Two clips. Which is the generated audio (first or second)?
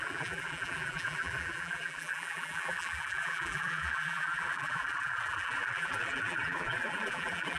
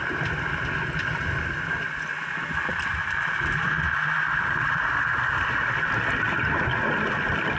first